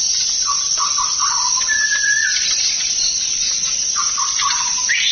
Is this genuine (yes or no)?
yes